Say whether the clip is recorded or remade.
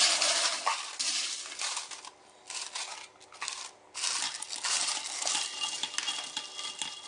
recorded